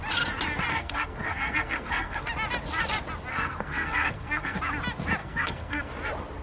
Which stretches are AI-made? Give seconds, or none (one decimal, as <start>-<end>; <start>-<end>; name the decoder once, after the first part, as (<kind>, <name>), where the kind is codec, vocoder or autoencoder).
0.7-2.2 (codec, SNAC); 3.3-4.6; 5.2-5.9